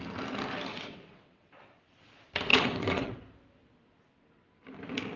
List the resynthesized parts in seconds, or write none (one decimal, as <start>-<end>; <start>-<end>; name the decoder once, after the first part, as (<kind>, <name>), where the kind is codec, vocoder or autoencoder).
0.7-1.8 (vocoder, WaveNeXt); 2.5-3.2